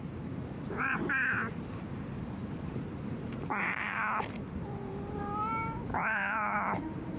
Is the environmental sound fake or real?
fake